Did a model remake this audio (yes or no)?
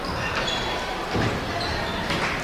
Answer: no